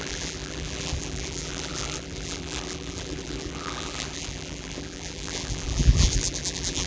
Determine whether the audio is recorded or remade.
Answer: remade